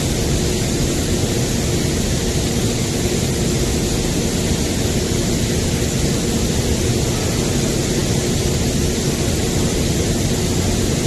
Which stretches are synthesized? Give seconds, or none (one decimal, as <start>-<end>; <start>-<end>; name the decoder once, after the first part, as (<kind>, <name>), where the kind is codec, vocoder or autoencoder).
none